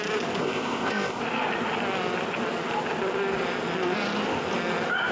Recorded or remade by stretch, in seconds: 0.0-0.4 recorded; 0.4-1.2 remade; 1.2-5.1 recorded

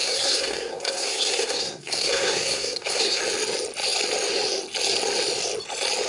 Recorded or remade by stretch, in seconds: 0.0-3.2 remade; 3.2-6.1 recorded

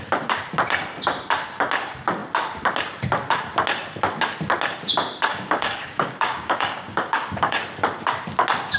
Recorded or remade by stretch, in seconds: 0.0-5.3 recorded; 5.3-7.6 remade; 7.6-8.8 recorded

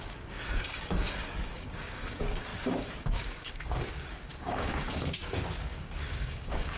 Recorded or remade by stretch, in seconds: 0.0-6.8 remade

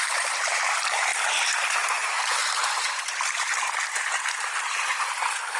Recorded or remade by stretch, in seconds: 0.0-1.1 remade; 1.1-1.9 recorded; 1.9-2.4 remade; 2.4-3.8 recorded; 3.8-5.6 remade

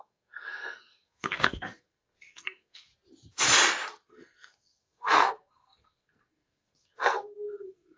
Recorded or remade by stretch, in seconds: 0.0-2.9 remade; 2.9-4.1 recorded; 4.1-8.0 remade